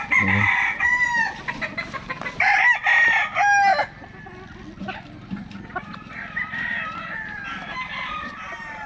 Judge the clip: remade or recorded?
recorded